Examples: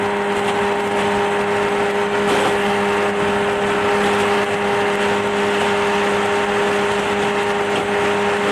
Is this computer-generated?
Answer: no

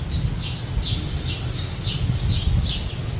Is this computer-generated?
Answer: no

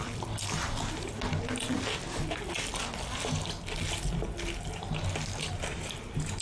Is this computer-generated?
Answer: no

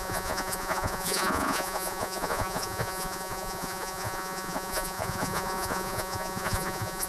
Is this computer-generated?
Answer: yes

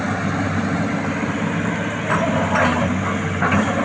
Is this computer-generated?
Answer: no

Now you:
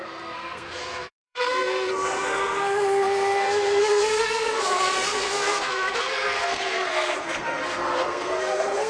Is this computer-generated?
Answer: yes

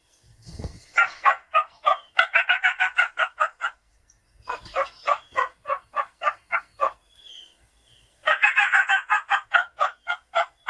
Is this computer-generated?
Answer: yes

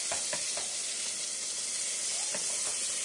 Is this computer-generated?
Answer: no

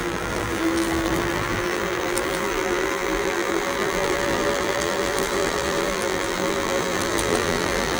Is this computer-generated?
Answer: yes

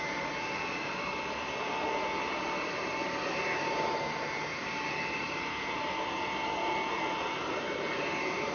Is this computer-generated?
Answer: yes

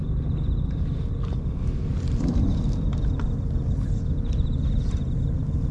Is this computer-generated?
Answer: no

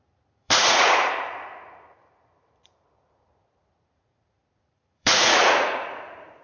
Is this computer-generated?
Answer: yes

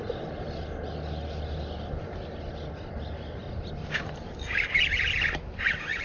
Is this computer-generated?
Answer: no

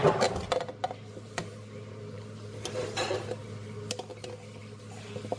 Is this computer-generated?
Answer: no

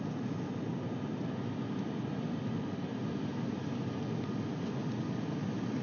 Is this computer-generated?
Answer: no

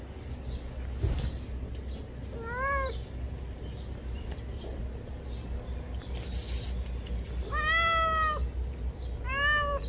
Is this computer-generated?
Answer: no